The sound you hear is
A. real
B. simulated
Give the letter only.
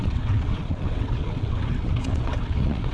B